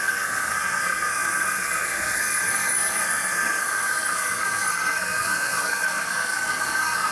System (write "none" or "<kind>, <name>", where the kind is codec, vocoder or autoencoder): codec, SNAC